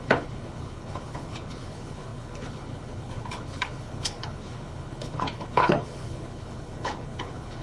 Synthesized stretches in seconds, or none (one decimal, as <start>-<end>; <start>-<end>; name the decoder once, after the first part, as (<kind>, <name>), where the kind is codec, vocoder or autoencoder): 0.0-7.6 (codec, HILCodec)